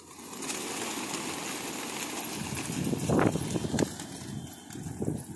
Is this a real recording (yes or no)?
yes